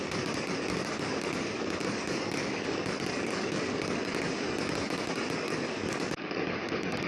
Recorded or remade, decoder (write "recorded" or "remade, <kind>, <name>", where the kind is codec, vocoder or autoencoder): remade, codec, DAC